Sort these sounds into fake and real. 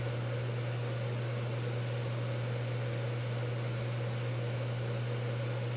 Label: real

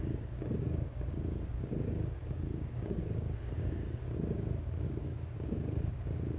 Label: fake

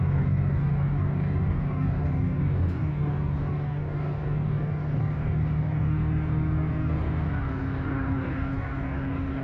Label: fake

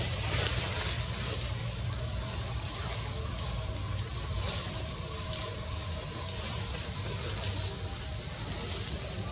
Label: real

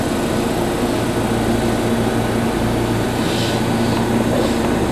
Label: real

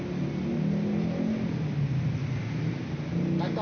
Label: real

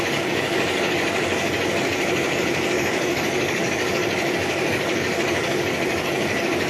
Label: fake